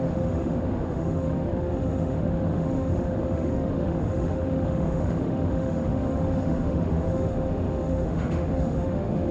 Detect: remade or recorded remade